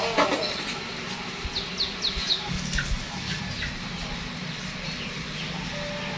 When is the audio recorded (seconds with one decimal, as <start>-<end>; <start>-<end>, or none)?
0.0-2.2; 3.4-6.2